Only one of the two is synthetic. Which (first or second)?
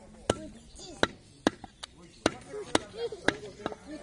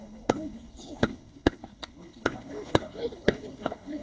second